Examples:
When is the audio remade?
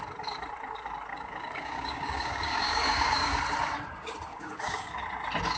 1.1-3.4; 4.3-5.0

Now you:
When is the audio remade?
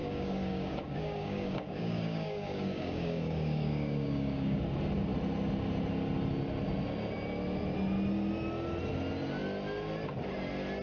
0.0-4.6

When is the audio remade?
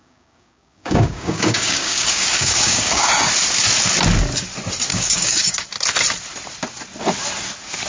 0.0-3.1; 4.9-5.5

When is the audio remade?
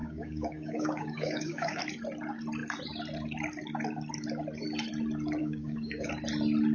0.0-1.8; 5.4-6.1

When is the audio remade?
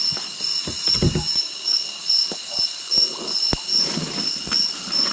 1.1-2.0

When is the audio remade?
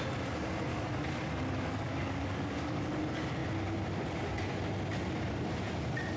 0.7-3.0